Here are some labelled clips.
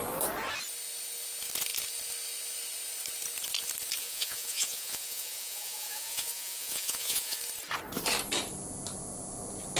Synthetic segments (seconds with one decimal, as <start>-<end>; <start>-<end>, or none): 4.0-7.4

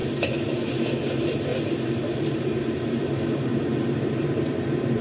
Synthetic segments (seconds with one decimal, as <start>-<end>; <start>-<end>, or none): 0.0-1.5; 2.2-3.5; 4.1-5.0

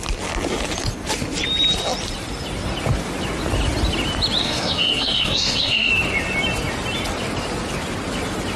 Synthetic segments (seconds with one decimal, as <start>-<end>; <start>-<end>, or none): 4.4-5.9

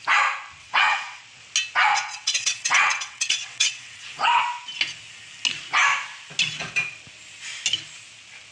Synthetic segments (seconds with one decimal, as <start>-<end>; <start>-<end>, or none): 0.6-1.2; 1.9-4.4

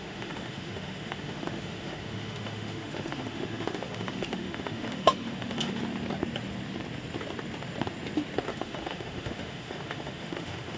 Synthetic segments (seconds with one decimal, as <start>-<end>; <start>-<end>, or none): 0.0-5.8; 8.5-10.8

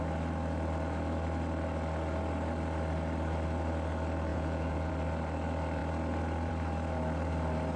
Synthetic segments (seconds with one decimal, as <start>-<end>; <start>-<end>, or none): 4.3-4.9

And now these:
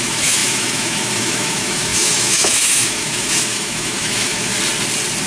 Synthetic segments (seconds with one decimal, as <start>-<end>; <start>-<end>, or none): 0.0-4.5

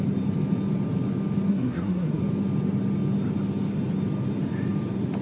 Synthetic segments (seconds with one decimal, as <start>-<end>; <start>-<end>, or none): 1.5-2.2